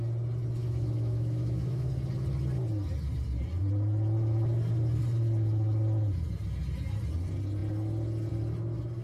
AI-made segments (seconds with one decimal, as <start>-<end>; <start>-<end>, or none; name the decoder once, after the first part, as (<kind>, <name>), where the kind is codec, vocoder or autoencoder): 0.6-1.9 (autoencoder, DAC-VAE)